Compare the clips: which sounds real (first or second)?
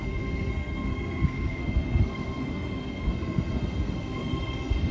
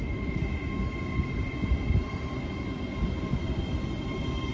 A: second